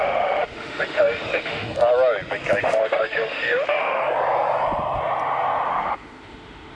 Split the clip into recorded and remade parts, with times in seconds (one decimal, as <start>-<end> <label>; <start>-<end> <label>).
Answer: 0.0-1.7 remade; 1.7-2.6 recorded; 2.6-4.0 remade; 4.0-5.7 recorded; 5.7-6.7 remade